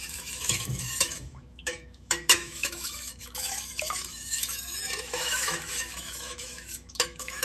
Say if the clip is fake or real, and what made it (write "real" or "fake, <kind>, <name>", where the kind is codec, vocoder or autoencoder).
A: fake, autoencoder, DAC-VAE